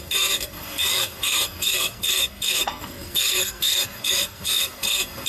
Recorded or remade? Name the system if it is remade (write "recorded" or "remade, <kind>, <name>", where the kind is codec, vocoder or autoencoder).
remade, codec, SNAC